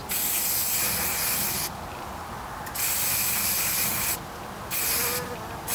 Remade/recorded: recorded